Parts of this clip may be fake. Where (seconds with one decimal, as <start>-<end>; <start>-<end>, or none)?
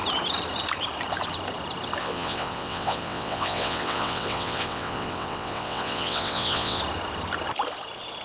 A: 2.0-6.8